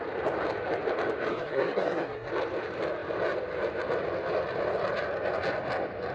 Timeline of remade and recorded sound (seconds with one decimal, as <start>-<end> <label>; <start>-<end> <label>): 0.0-1.3 recorded; 1.3-2.3 remade; 2.3-6.1 recorded